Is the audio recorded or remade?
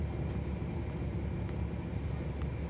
recorded